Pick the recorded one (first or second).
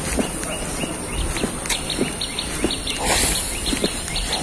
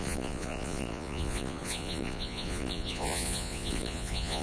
first